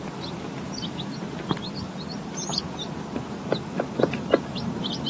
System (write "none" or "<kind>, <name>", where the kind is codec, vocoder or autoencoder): none